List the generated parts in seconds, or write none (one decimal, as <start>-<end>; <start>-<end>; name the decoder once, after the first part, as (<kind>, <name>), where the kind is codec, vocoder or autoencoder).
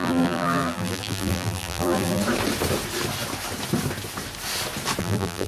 0.0-2.2 (vocoder, BigVGAN v2); 5.0-5.5